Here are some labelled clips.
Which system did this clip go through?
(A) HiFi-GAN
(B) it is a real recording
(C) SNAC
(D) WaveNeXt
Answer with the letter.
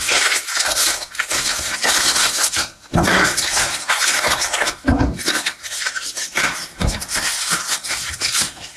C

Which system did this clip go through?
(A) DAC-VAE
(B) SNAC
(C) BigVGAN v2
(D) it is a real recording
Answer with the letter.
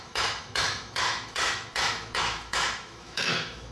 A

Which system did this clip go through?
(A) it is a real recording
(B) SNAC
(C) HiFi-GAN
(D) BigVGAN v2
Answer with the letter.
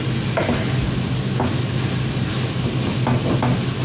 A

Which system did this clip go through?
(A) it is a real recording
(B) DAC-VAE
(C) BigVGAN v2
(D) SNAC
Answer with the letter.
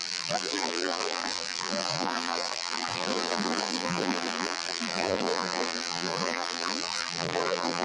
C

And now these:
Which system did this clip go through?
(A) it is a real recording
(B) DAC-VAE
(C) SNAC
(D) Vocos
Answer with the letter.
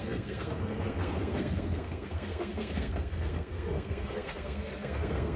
C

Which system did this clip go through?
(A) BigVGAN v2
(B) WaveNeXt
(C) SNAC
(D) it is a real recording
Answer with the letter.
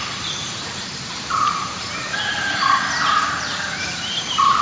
A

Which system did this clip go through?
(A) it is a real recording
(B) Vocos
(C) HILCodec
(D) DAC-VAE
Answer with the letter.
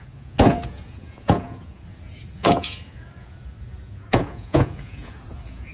B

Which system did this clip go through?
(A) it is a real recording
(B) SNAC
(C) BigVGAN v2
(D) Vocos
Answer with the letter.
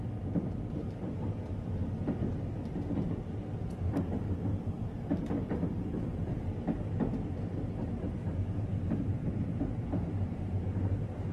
C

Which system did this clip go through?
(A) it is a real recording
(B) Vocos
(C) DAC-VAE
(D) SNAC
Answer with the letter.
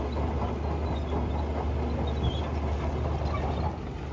A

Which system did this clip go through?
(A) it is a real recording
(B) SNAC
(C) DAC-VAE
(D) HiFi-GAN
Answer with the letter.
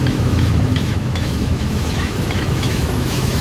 C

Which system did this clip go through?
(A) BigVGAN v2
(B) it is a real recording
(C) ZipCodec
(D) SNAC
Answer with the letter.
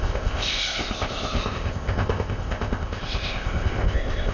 C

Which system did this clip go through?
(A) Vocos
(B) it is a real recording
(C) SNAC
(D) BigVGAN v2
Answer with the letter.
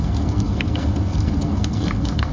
C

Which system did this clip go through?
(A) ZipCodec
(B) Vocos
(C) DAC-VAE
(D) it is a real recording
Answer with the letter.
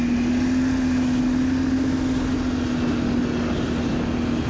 D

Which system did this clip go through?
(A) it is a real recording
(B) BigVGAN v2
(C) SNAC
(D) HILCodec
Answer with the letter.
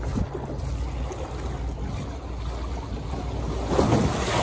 A